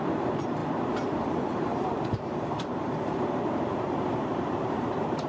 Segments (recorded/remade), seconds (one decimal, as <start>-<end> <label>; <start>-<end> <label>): 0.0-5.3 remade